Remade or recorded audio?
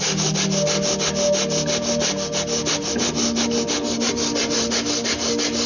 recorded